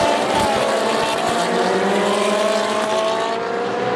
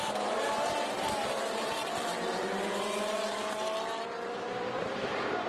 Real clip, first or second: first